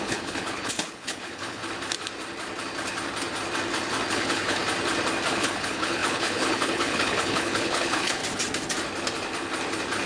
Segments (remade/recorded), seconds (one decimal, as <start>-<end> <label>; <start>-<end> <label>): 0.0-1.6 remade; 1.6-4.1 recorded; 4.1-4.6 remade; 4.6-5.3 recorded; 5.3-8.2 remade; 8.2-10.1 recorded

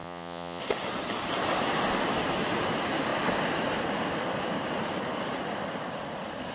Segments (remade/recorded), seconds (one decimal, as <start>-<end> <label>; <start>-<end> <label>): 0.0-0.6 remade; 0.6-6.5 recorded

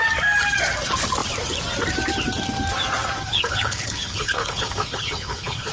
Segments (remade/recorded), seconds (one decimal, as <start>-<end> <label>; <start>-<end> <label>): 0.0-3.3 recorded; 3.3-5.7 remade

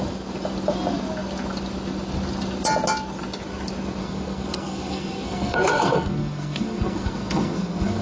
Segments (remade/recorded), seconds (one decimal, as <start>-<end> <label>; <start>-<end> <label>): 0.0-4.0 recorded; 4.0-8.0 remade

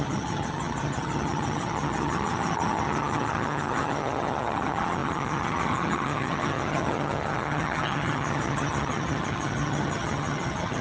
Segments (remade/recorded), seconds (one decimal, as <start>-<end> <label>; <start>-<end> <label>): 0.0-10.8 remade

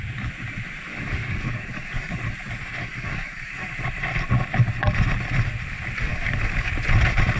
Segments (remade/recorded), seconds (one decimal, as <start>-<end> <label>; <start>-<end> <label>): 0.0-0.9 recorded; 0.9-2.2 remade; 2.2-2.8 recorded; 2.8-3.7 remade; 3.7-6.1 recorded; 6.1-6.7 remade; 6.7-7.4 recorded